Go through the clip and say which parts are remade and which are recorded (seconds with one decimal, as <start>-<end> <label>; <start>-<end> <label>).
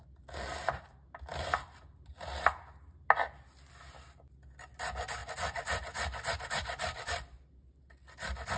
0.0-8.6 recorded